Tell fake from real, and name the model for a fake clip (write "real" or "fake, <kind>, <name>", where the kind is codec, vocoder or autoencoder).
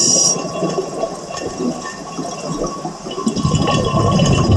fake, vocoder, BigVGAN v2